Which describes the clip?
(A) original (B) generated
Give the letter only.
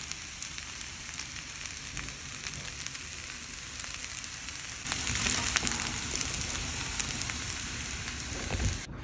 B